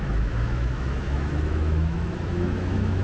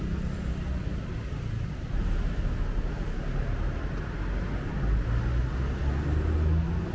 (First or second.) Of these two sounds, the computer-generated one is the first